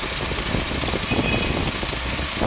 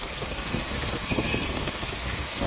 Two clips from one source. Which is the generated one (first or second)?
second